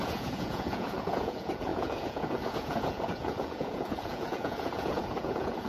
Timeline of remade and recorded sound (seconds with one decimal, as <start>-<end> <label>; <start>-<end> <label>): 0.0-5.7 remade